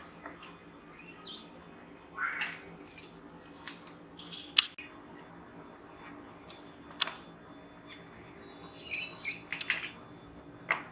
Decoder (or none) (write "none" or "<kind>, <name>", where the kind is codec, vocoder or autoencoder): none